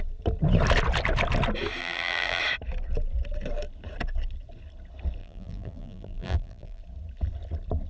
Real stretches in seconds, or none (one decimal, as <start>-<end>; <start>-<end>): 0.0-1.8; 2.4-5.2; 6.8-7.9